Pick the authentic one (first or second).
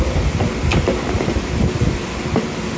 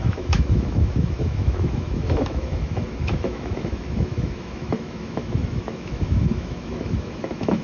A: first